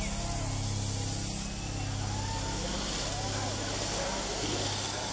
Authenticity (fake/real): real